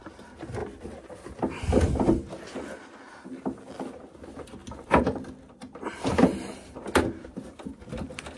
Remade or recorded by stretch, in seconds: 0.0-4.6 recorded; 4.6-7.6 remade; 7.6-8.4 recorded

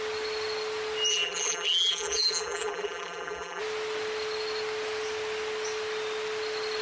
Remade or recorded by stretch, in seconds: 0.0-1.1 recorded; 1.1-3.6 remade; 3.6-6.8 recorded

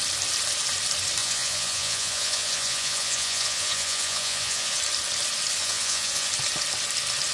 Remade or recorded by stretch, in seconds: 0.0-1.2 recorded; 1.2-4.8 remade; 4.8-5.6 recorded; 5.6-6.3 remade; 6.3-7.3 recorded

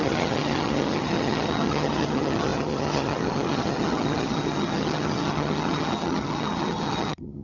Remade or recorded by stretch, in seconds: 0.0-7.4 remade